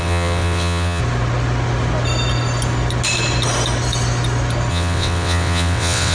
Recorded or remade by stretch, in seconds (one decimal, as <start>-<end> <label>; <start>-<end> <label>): 0.0-1.0 remade; 1.0-4.7 recorded; 4.7-6.1 remade